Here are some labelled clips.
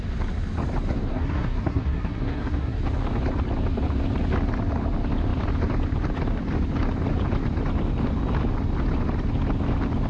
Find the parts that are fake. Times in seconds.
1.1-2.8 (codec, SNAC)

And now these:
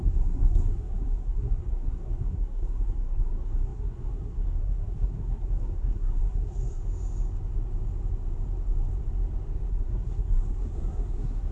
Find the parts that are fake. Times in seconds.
0.0-6.8 (codec, SNAC); 9.7-11.5

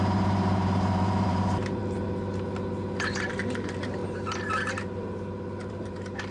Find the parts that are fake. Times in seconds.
0.0-1.8 (vocoder, BigVGAN v2); 3.3-4.0; 5.7-6.3

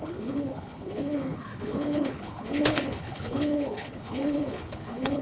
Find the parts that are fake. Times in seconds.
0.0-5.2 (codec, HILCodec)

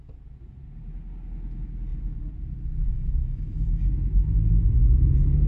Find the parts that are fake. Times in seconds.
2.9-3.9 (autoencoder, DAC-VAE)

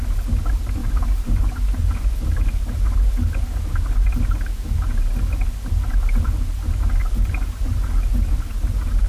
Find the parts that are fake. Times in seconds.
0.8-2.6 (vocoder, BigVGAN v2); 3.7-4.4; 7.0-8.1

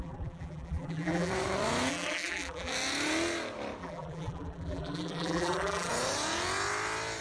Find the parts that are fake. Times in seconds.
0.0-1.3 (vocoder, BigVGAN v2); 1.9-2.7; 3.8-5.9